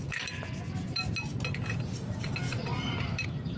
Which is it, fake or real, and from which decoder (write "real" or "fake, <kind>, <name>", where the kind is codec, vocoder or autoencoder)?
real